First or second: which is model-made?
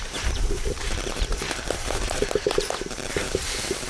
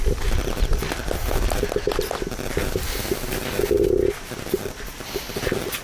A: first